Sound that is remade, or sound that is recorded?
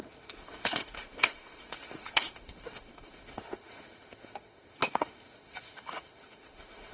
remade